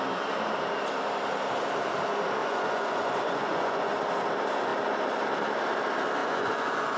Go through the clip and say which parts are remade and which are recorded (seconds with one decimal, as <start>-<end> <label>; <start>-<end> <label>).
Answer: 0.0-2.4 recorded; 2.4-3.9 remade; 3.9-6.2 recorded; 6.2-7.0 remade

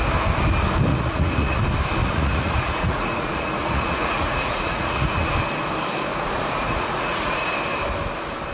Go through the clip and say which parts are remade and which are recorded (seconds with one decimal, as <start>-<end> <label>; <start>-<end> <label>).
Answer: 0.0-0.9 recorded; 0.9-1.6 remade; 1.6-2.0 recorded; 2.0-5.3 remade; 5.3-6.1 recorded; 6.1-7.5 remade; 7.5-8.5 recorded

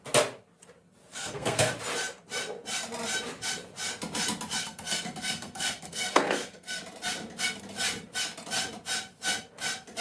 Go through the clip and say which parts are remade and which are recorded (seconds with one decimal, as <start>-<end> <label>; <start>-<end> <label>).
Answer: 0.0-1.1 recorded; 1.1-1.7 remade; 1.7-4.6 recorded; 4.6-6.8 remade; 6.8-10.0 recorded

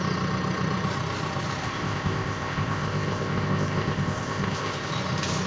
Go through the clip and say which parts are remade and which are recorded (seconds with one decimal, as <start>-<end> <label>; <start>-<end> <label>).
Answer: 0.0-1.6 recorded; 1.6-4.9 remade; 4.9-5.5 recorded

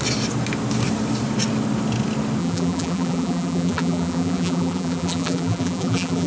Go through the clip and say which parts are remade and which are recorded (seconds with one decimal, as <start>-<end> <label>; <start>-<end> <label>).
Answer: 0.0-2.4 recorded; 2.4-6.3 remade

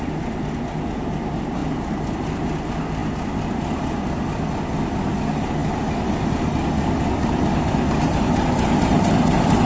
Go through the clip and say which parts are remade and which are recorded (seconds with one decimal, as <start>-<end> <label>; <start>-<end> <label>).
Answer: 0.0-9.7 recorded

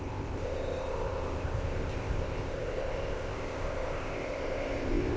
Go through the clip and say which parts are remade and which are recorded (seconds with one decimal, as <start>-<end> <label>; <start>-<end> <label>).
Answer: 0.0-5.2 remade